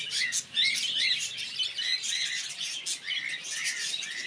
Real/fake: real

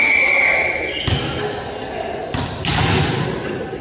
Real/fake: real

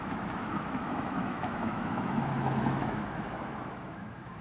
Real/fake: fake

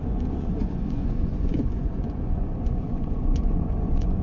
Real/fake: fake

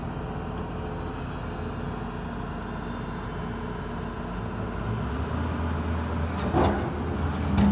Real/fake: real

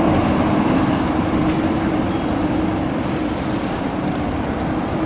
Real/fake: fake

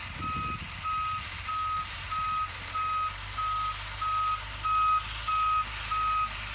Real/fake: real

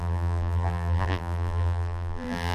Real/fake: fake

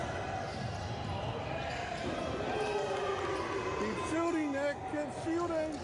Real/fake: real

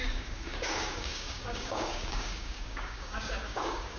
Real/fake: fake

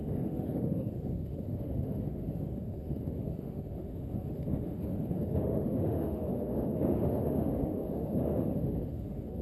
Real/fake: fake